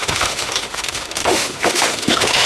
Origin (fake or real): fake